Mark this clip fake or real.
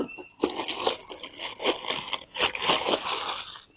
real